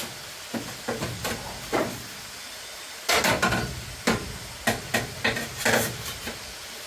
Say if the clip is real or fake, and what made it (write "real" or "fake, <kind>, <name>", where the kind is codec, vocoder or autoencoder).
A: real